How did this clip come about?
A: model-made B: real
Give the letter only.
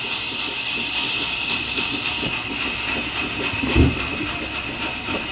B